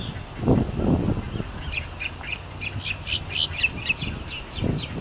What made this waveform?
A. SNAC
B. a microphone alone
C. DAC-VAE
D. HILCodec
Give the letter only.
B